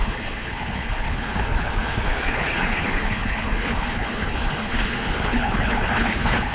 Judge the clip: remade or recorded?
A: remade